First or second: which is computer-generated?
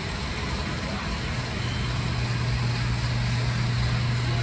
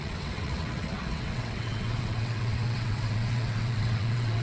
second